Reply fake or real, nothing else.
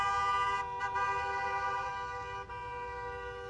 real